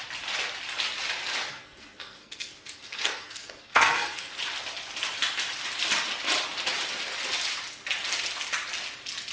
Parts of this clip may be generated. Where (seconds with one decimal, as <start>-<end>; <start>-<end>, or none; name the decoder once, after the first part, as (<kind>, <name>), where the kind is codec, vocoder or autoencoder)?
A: 1.5-4.3 (codec, SNAC)